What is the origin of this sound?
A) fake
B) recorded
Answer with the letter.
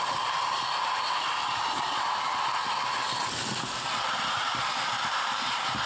B